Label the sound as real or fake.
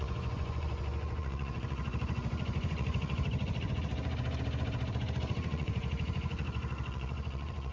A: fake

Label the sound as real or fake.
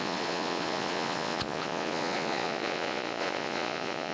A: fake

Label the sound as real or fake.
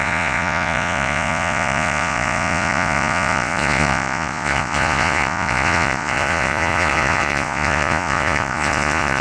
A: fake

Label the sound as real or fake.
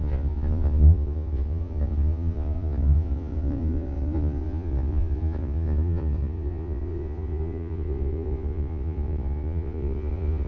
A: fake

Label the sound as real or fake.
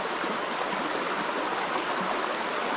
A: real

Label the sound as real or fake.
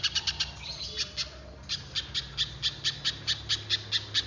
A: real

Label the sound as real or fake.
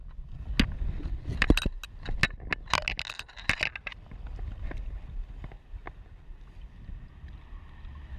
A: real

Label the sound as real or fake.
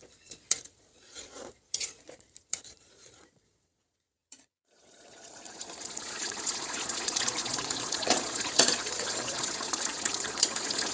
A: fake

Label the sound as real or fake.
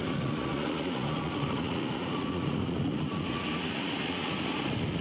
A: fake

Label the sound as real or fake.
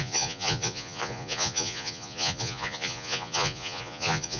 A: fake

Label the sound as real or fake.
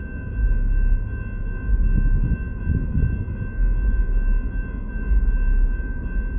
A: real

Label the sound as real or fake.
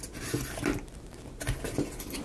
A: real